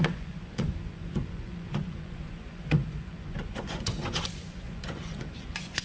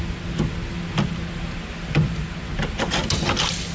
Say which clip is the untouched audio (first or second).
second